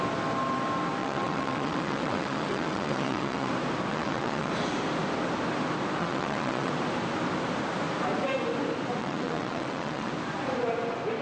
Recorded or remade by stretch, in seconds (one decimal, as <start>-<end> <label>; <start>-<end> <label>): 0.0-1.0 recorded; 1.0-3.5 remade; 3.5-3.9 recorded; 3.9-4.5 remade; 4.5-6.0 recorded; 6.0-6.7 remade; 6.7-9.0 recorded; 9.0-10.1 remade; 10.1-11.2 recorded